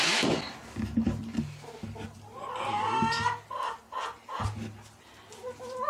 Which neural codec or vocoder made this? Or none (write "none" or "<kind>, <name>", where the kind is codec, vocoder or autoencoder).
none